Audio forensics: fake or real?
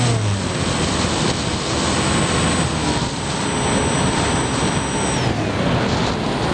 real